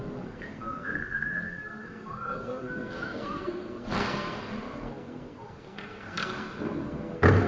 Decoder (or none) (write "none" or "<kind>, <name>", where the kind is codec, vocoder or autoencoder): codec, SNAC